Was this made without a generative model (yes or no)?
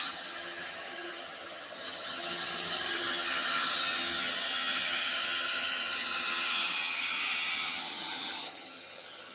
no